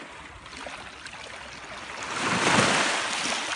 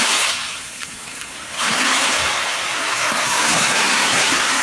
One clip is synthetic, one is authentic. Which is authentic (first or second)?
first